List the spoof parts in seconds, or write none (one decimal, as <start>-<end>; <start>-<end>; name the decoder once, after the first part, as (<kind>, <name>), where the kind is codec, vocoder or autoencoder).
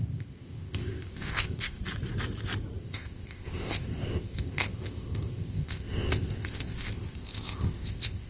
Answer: 0.0-1.8 (codec, ZipCodec); 2.8-8.3